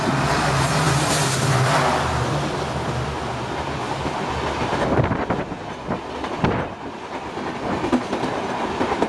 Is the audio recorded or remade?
recorded